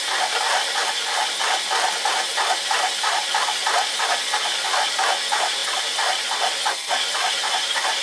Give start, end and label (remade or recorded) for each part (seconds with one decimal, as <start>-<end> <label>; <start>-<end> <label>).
0.0-8.0 recorded